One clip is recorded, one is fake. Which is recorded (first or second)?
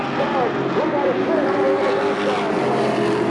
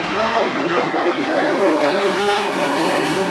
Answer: first